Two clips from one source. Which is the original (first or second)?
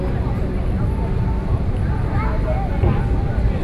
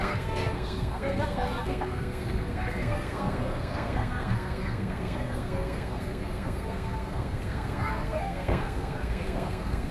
first